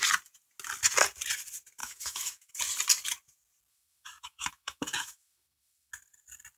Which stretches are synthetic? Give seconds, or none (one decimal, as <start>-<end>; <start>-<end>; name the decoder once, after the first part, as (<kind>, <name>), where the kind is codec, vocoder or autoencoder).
1.8-2.5 (autoencoder, DAC-VAE); 3.7-5.9